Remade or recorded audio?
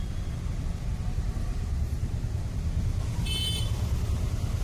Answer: recorded